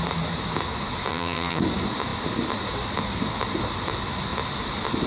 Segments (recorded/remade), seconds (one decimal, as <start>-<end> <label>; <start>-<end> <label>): 0.0-1.1 recorded; 1.1-1.6 remade; 1.6-5.1 recorded